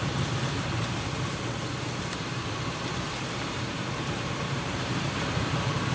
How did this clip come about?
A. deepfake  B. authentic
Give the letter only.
A